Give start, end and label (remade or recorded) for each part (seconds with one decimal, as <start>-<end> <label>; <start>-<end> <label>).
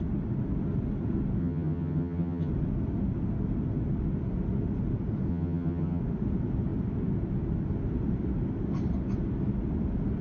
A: 0.0-1.4 recorded; 1.4-2.5 remade; 2.5-5.3 recorded; 5.3-6.0 remade; 6.0-10.2 recorded